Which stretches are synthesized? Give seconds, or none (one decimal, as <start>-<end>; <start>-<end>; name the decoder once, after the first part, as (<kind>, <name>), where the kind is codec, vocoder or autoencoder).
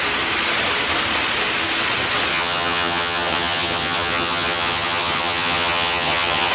2.3-6.5 (vocoder, HiFi-GAN)